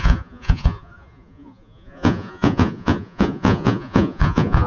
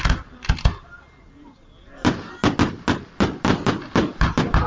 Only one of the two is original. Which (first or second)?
second